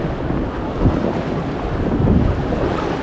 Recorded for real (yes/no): yes